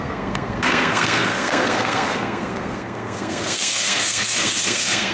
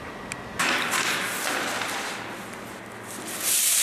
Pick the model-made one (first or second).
first